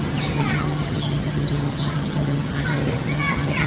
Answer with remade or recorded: remade